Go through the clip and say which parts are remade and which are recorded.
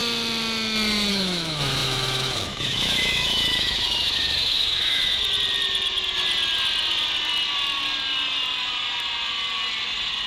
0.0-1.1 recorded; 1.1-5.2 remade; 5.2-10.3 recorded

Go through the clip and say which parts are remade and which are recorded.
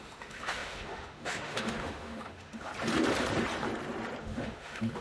0.0-2.7 remade; 2.7-4.2 recorded; 4.2-5.0 remade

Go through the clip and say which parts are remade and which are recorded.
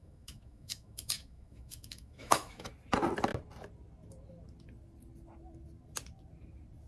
0.0-2.7 remade; 2.7-6.9 recorded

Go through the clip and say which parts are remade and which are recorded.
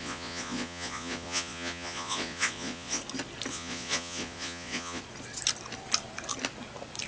0.0-3.0 remade; 3.0-3.5 recorded; 3.5-5.0 remade; 5.0-7.1 recorded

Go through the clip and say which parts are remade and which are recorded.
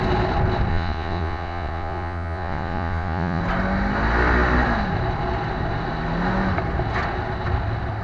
0.0-0.7 recorded; 0.7-3.4 remade; 3.4-8.0 recorded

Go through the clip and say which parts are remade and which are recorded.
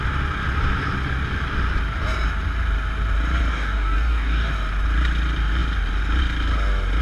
0.0-3.5 recorded; 3.5-4.5 remade; 4.5-7.0 recorded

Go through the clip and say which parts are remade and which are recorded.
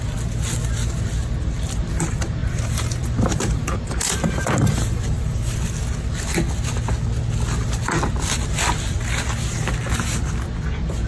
0.0-2.4 recorded; 2.4-5.7 remade; 5.7-11.1 recorded